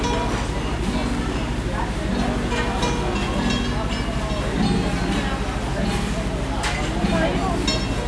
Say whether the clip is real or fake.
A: real